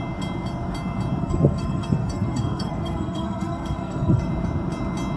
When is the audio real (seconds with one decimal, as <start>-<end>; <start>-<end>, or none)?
0.0-1.2; 4.3-5.2